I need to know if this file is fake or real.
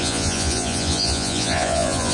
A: fake